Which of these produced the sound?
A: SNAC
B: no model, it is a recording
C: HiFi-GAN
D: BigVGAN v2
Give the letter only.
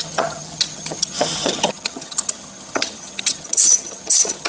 C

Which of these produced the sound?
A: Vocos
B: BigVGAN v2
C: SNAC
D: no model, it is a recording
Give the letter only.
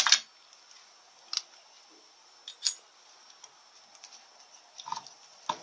D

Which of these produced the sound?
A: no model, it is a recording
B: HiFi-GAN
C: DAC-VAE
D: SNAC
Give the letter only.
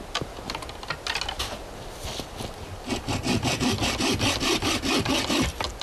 A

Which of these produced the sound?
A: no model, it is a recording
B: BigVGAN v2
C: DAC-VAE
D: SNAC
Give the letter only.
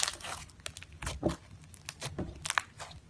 A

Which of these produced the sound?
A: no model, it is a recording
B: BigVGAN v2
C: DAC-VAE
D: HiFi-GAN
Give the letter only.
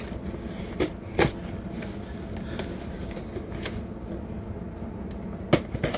A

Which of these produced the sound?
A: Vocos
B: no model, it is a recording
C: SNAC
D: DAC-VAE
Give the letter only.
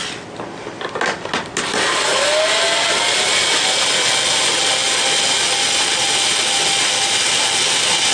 B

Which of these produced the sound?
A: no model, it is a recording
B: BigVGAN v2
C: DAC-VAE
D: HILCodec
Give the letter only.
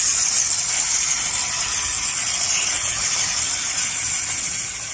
A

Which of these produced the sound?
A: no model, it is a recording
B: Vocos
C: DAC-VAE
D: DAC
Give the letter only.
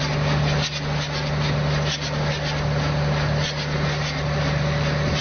A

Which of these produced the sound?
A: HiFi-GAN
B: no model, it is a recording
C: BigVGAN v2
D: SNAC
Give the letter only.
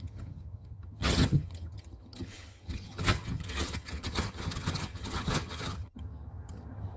A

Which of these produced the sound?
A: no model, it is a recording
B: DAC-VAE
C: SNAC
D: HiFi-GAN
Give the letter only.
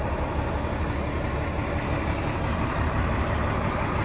A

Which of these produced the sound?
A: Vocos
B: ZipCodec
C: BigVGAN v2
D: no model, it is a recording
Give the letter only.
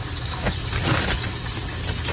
D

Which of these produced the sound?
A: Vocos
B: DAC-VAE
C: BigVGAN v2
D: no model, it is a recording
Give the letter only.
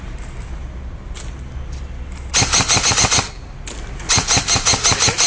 D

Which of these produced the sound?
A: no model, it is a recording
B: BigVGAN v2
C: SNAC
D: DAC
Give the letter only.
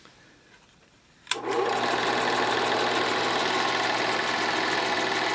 A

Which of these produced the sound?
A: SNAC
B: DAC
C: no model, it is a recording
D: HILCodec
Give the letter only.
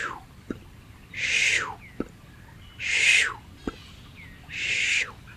C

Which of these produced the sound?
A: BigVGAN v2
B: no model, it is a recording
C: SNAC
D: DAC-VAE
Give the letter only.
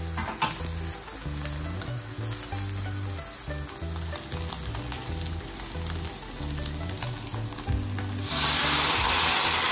B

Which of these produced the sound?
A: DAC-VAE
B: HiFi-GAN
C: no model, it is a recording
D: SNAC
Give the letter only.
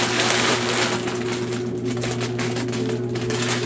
C